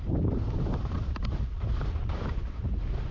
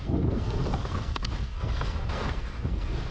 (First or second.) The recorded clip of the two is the first